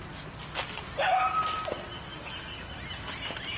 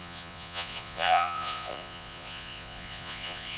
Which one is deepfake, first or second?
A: second